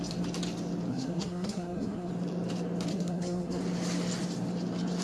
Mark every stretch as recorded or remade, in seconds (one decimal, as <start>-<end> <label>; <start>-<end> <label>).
0.0-0.9 recorded; 0.9-2.1 remade; 2.1-2.9 recorded; 2.9-3.6 remade; 3.6-5.0 recorded